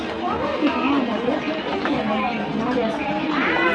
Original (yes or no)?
yes